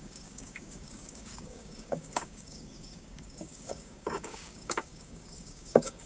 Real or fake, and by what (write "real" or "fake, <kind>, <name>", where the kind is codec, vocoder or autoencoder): fake, codec, DAC